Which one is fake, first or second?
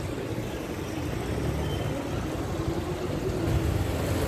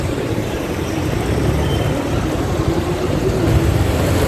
second